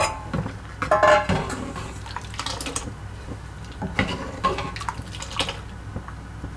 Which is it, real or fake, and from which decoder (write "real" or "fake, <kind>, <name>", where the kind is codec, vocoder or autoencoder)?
real